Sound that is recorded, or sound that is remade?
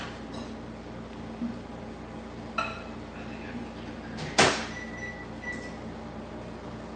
recorded